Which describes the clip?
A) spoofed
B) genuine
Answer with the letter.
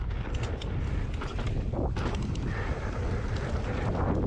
B